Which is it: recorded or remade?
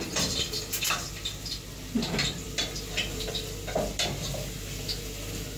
recorded